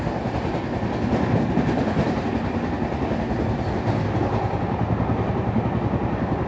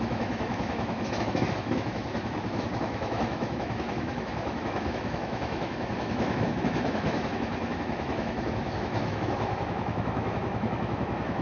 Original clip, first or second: first